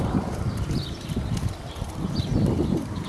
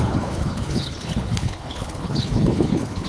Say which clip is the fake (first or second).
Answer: second